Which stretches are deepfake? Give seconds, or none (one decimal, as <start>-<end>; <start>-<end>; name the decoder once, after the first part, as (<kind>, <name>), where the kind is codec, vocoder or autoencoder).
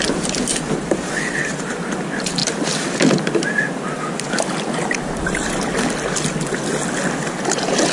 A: 0.5-1.1 (vocoder, BigVGAN v2)